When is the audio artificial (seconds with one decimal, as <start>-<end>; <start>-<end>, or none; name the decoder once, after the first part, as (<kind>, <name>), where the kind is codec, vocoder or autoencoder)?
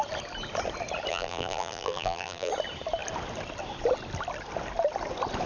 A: 1.1-2.5 (vocoder, BigVGAN v2)